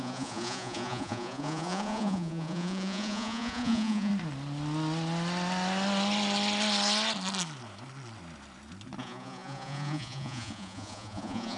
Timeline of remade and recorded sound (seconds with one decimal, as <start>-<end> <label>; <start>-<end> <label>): 0.0-4.1 remade; 4.1-9.0 recorded; 9.0-11.6 remade